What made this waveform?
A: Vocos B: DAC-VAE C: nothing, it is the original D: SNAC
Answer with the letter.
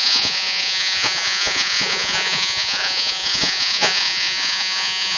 A